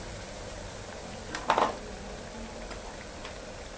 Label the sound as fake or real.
real